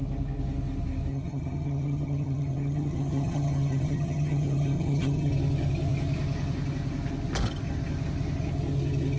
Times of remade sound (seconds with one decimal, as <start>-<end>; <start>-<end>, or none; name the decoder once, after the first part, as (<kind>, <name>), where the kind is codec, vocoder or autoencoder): 1.1-5.3 (vocoder, HiFi-GAN)